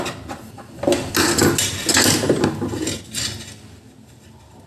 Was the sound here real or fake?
real